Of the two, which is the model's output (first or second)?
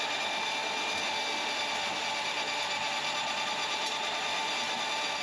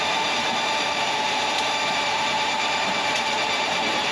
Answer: second